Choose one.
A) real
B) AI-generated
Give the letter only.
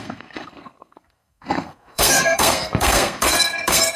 B